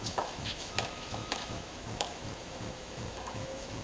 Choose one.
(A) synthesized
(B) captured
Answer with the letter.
A